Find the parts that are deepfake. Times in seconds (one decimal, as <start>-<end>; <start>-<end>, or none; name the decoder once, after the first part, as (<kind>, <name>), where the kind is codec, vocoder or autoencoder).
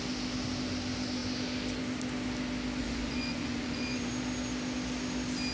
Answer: 2.8-4.1 (vocoder, Vocos)